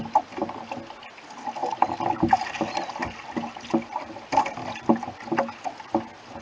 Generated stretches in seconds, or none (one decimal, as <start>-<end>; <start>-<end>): 1.6-5.0